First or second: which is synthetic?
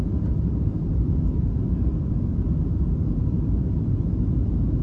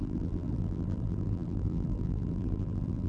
second